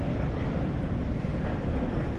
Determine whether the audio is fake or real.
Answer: real